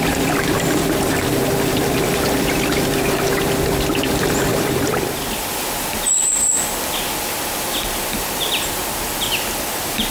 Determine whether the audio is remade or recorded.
remade